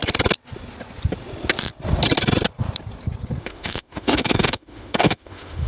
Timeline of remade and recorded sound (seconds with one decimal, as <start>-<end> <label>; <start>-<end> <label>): 0.0-3.4 recorded; 3.4-5.7 remade